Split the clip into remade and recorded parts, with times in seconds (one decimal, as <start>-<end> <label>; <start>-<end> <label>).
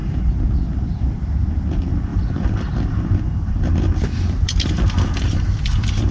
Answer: 0.0-2.1 recorded; 2.1-6.1 remade